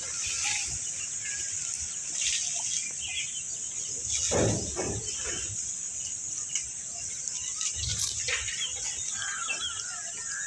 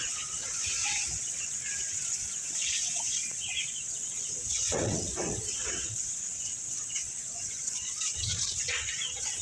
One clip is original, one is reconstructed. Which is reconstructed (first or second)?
second